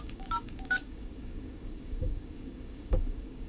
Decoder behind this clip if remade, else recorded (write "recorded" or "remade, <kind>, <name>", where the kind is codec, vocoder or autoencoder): remade, codec, DAC